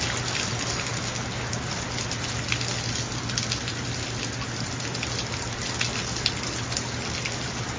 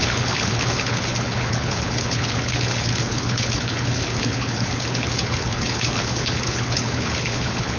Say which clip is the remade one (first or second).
second